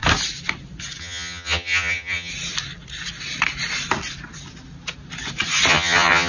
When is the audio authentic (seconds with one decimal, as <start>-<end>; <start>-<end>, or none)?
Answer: 0.0-1.0; 2.3-5.7